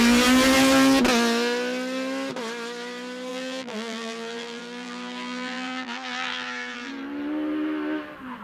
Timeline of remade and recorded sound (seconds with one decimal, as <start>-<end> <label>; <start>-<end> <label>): 0.0-3.3 recorded; 3.3-6.9 remade; 6.9-8.4 recorded